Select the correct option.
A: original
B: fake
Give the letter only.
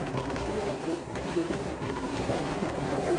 B